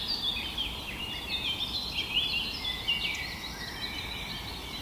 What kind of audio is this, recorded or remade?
recorded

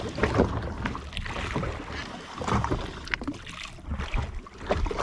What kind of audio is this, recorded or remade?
recorded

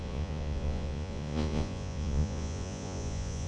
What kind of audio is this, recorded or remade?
remade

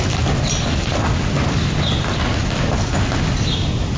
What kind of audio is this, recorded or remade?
recorded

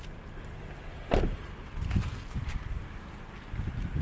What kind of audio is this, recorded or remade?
recorded